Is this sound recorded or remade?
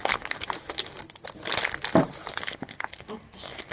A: recorded